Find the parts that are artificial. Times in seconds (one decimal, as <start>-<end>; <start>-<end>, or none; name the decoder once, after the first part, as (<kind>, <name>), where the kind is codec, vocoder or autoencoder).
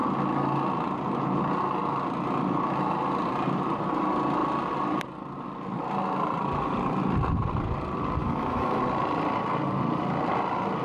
8.2-8.8 (autoencoder, DAC-VAE)